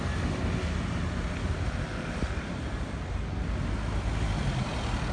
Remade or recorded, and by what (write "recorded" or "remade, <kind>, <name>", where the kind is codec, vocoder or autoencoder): recorded